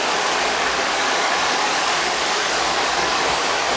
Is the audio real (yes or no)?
no